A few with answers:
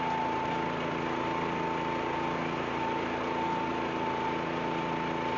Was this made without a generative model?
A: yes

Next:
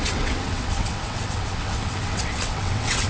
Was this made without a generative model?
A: no